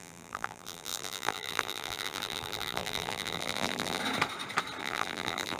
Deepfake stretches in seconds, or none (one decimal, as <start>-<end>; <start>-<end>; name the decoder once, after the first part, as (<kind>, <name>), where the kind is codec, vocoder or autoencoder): 0.0-4.0 (vocoder, BigVGAN v2); 4.8-5.6